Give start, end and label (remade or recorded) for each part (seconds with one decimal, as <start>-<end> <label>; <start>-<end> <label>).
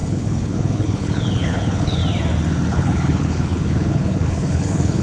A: 0.0-2.0 remade; 2.0-2.7 recorded; 2.7-5.0 remade